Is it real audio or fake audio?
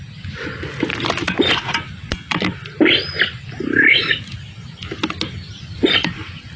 real